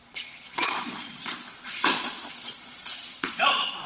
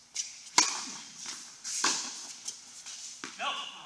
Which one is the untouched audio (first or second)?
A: second